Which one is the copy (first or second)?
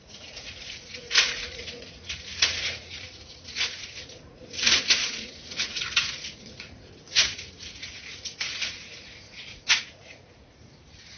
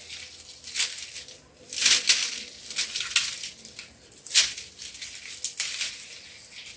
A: first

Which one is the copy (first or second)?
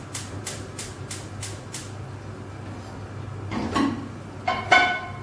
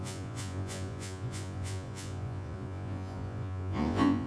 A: second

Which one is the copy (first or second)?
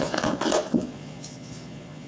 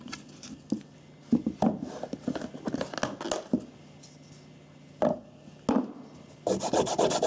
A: first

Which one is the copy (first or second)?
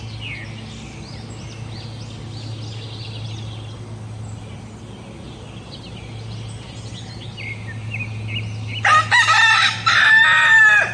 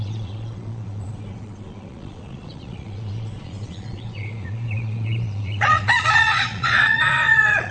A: second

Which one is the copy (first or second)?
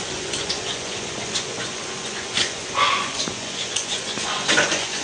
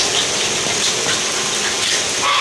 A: first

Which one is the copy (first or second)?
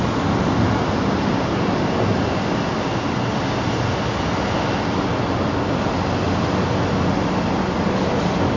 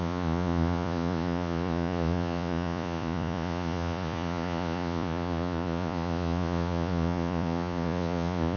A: second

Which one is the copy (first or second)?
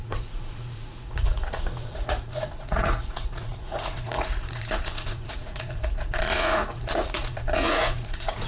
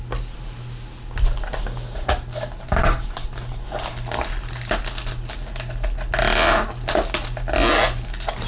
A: first